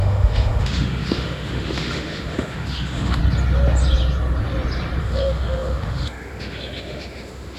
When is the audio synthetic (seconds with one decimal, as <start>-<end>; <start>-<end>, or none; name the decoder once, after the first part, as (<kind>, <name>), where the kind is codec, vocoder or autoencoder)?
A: 0.0-3.2 (autoencoder, DAC-VAE); 5.0-7.6